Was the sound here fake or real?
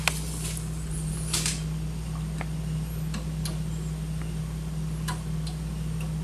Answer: real